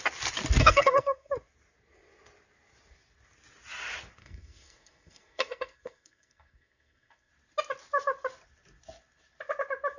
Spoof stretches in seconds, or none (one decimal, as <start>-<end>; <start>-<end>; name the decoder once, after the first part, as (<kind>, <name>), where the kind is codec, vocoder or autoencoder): 0.6-1.3 (codec, SNAC); 4.2-7.3